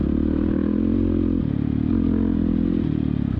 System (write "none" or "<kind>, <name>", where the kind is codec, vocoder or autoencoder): none